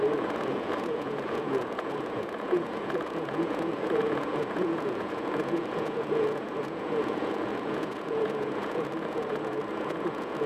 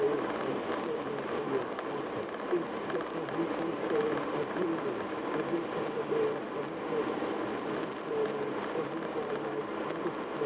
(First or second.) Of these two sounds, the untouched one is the second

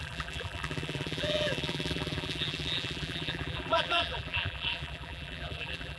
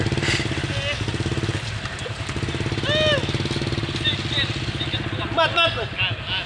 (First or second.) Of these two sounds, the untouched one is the second